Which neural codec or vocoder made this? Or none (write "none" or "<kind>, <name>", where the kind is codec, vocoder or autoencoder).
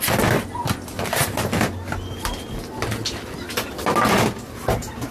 none